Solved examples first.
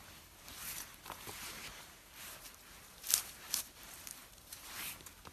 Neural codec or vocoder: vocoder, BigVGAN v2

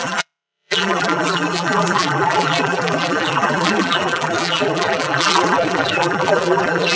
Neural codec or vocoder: vocoder, BigVGAN v2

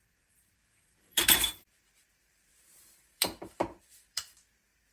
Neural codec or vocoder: vocoder, BigVGAN v2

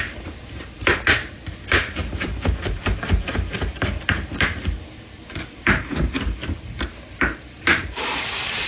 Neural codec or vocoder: vocoder, BigVGAN v2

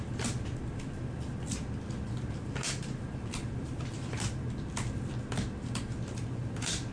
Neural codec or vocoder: none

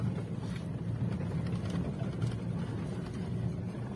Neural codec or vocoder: none